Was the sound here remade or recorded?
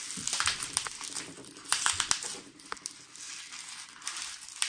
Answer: recorded